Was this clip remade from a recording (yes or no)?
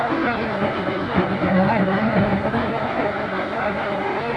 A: yes